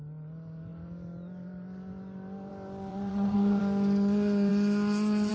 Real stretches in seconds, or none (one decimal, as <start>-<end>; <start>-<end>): 0.0-2.9; 3.6-5.3